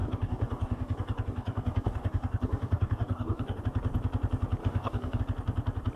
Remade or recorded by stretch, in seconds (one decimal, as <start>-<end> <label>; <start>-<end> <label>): 0.0-3.6 remade; 3.6-4.6 recorded; 4.6-5.2 remade; 5.2-6.0 recorded